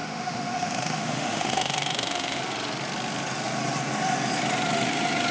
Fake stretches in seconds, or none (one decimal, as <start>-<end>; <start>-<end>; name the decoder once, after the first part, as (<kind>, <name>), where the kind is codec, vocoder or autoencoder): 0.0-2.4 (autoencoder, DAC-VAE)